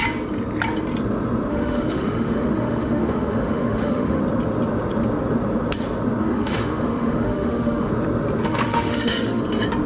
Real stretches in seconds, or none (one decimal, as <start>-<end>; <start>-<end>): 0.0-1.5; 4.2-6.2; 7.9-8.4; 9.4-9.9